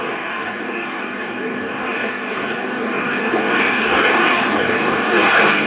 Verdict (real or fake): fake